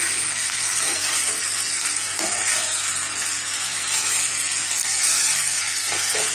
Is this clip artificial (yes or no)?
yes